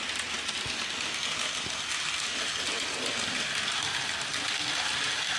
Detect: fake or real real